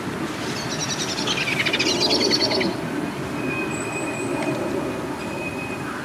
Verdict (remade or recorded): recorded